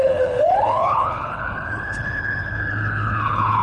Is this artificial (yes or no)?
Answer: yes